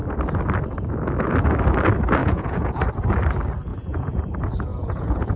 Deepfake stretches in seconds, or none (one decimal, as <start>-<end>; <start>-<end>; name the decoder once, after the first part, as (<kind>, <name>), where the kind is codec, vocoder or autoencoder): 2.2-2.8 (vocoder, Vocos); 3.7-4.2; 4.7-5.4